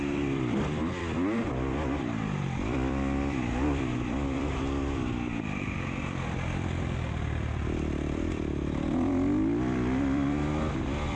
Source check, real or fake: fake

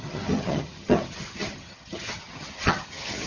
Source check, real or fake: fake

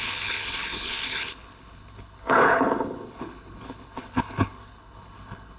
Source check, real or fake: fake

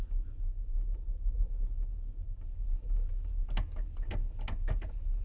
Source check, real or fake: real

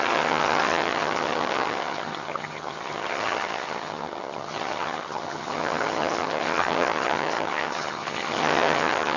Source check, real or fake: fake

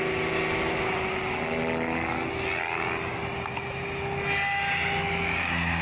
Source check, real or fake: real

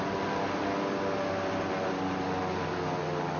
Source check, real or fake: real